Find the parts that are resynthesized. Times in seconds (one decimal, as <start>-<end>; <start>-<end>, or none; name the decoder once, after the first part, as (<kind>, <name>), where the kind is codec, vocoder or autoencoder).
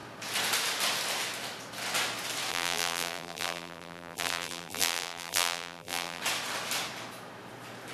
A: 2.5-6.2 (vocoder, BigVGAN v2)